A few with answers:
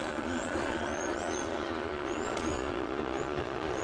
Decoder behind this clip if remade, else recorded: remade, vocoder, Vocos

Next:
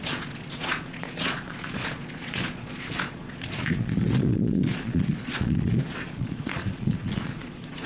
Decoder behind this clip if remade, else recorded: remade, vocoder, Vocos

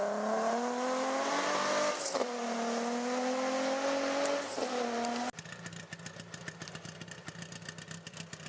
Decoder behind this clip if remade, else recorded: recorded